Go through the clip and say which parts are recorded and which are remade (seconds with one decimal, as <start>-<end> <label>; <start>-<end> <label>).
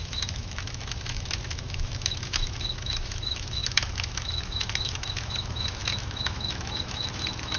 0.0-7.6 remade